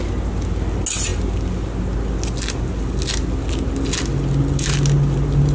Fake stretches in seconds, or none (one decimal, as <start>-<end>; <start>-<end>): none